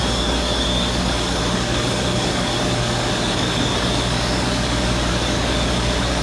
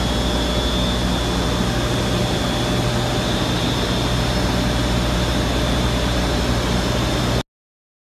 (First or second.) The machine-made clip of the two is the first